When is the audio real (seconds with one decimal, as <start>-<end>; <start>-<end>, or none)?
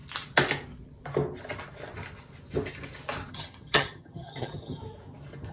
0.0-3.3; 4.8-5.5